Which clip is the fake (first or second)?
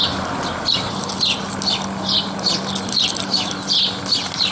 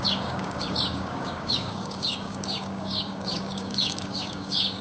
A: second